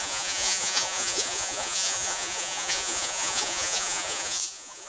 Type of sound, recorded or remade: remade